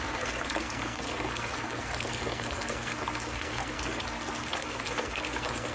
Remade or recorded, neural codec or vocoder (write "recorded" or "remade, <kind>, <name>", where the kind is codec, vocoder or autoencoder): remade, codec, SNAC